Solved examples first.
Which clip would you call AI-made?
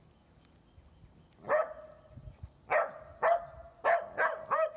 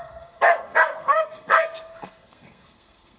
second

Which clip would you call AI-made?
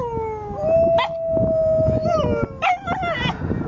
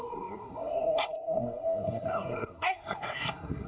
second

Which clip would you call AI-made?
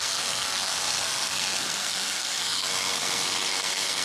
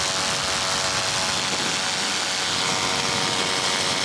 first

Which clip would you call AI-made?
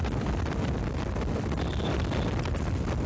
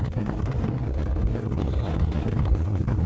second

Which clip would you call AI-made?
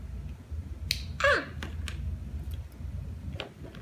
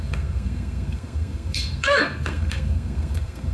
second